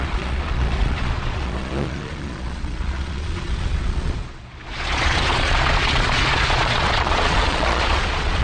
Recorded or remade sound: remade